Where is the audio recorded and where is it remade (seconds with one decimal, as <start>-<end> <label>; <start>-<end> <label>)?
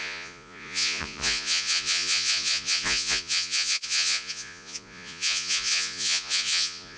0.0-7.0 remade